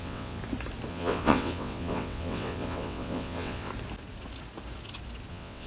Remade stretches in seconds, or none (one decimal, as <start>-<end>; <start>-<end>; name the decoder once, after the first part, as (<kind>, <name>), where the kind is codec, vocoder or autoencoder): 0.0-0.4 (vocoder, WaveNeXt); 0.9-3.7; 5.3-5.7